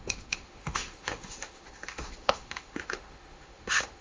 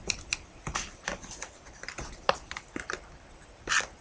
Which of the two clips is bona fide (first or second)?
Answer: second